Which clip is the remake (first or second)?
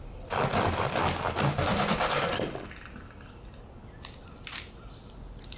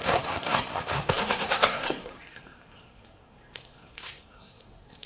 second